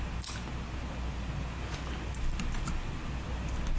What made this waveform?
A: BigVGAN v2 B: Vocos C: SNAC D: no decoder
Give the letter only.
D